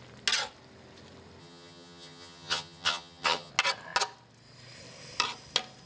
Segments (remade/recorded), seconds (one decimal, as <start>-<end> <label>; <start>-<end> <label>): 0.0-1.4 recorded; 1.4-3.5 remade; 3.5-5.9 recorded